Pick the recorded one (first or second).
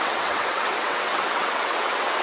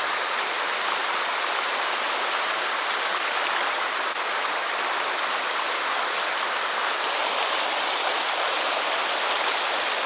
second